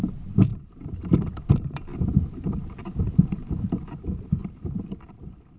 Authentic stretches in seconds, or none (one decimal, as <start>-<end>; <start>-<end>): 0.0-0.5; 3.9-4.4; 5.1-5.6